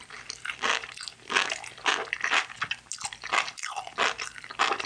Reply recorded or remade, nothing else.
recorded